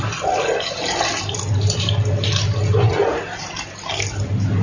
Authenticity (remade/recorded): recorded